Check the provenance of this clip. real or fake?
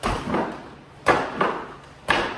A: real